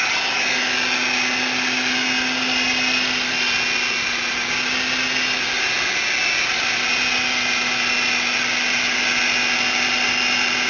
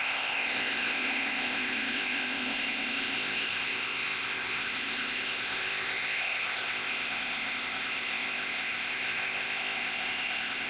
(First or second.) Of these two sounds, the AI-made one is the second